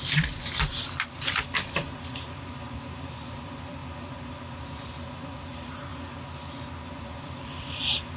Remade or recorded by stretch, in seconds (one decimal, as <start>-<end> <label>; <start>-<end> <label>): 0.0-3.8 remade; 3.8-4.3 recorded; 4.3-5.9 remade; 5.9-7.0 recorded; 7.0-8.2 remade

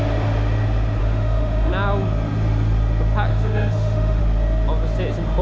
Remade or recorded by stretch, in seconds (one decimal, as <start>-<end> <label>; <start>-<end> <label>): 0.0-1.0 recorded; 1.0-1.7 remade; 1.7-3.3 recorded; 3.3-4.2 remade; 4.2-5.4 recorded

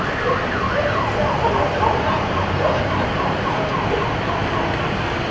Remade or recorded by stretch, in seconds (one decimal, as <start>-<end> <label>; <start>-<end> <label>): 0.0-5.3 recorded

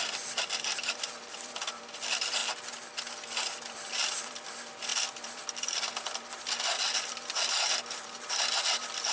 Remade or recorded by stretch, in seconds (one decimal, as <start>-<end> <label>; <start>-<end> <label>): 0.0-2.4 remade; 2.4-3.1 recorded; 3.1-9.1 remade

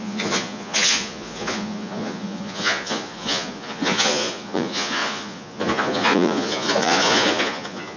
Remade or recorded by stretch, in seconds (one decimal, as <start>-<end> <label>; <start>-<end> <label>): 0.0-8.0 remade

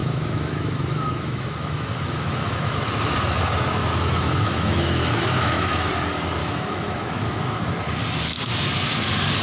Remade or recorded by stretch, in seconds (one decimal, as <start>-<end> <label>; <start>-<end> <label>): 0.0-2.7 remade; 2.7-3.8 recorded; 3.8-5.9 remade; 5.9-6.4 recorded; 6.4-7.6 remade; 7.6-8.3 recorded; 8.3-9.0 remade; 9.0-9.4 recorded